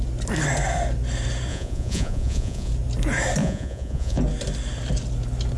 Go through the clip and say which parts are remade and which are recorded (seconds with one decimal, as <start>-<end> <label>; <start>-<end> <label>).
0.0-1.5 recorded; 1.5-2.7 remade; 2.7-3.4 recorded; 3.4-4.2 remade; 4.2-5.6 recorded